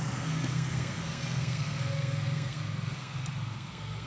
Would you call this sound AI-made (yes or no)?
yes